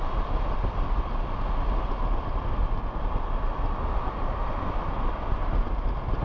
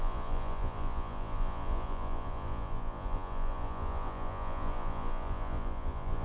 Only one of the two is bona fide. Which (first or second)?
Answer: first